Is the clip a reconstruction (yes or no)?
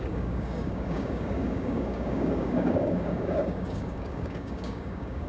yes